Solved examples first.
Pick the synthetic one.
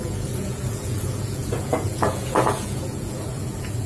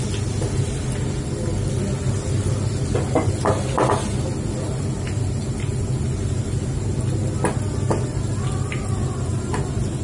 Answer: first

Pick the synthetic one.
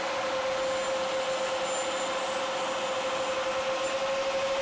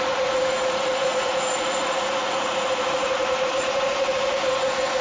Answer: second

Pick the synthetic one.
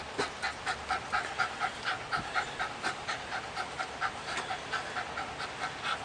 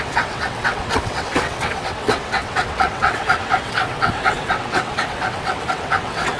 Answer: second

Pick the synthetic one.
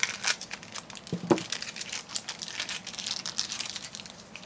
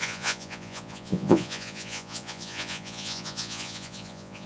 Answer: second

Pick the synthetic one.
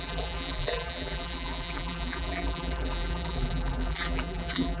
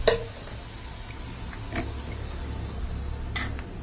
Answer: first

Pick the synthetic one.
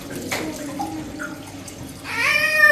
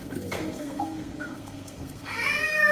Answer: second